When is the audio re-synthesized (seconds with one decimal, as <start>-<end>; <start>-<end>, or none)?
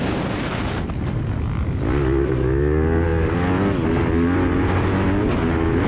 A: none